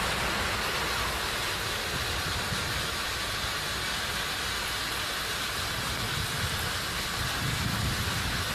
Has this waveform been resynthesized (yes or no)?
no